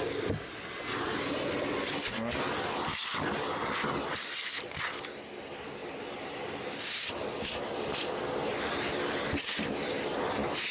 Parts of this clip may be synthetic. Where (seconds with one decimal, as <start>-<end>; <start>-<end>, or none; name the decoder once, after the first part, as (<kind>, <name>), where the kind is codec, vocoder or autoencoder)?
3.1-5.0 (vocoder, BigVGAN v2); 5.8-7.1